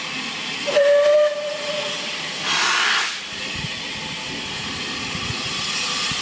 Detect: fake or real real